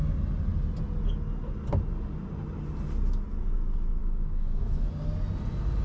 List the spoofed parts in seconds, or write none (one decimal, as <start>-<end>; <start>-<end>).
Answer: 4.0-4.9